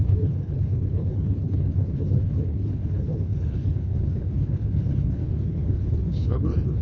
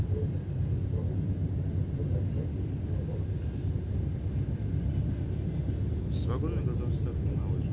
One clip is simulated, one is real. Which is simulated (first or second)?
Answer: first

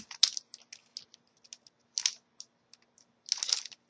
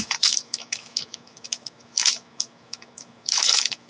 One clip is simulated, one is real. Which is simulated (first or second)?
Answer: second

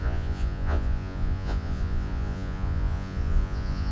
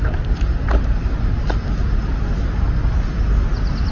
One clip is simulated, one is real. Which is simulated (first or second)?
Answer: first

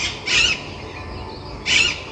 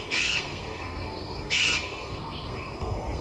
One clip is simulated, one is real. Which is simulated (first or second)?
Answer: second